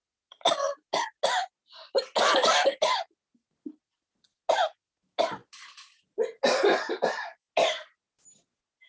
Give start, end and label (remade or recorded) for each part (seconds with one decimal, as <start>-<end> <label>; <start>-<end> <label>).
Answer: 0.0-8.9 recorded